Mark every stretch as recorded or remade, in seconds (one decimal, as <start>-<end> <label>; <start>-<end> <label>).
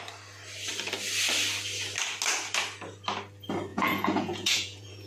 0.0-3.7 recorded; 3.7-5.1 remade